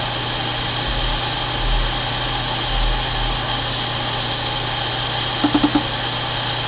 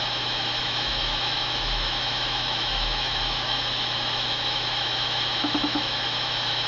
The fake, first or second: second